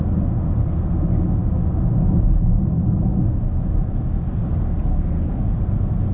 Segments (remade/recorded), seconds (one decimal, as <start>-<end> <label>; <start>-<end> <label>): 0.0-4.9 recorded; 4.9-5.4 remade; 5.4-6.1 recorded